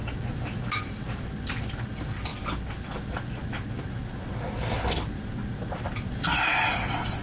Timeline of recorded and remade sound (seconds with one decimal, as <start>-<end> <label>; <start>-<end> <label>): 0.0-7.2 recorded